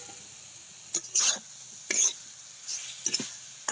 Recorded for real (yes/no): yes